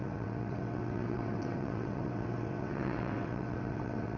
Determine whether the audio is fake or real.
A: fake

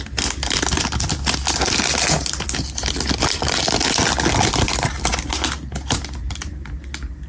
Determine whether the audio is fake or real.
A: real